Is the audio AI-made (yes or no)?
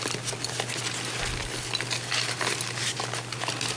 no